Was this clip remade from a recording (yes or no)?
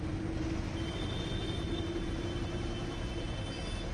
no